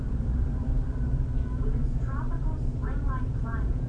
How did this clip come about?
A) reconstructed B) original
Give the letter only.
A